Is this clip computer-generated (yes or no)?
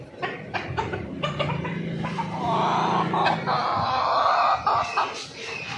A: no